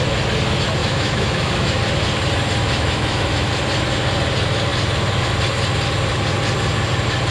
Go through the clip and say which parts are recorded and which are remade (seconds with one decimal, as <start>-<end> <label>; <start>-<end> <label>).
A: 0.0-0.8 recorded; 0.8-1.8 remade; 1.8-2.6 recorded; 2.6-3.5 remade; 3.5-7.3 recorded